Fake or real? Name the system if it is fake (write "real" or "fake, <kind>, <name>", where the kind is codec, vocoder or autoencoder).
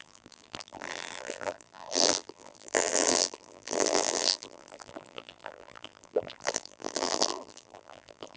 fake, vocoder, BigVGAN v2